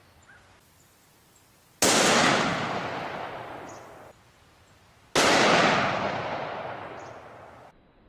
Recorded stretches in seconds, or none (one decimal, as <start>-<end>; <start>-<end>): 0.0-8.1